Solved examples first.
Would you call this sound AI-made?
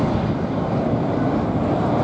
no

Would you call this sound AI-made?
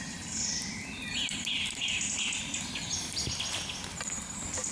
no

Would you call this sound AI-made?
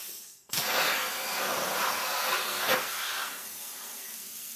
yes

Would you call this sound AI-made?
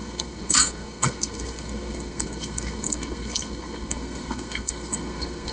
yes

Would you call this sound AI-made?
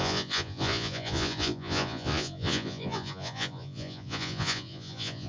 yes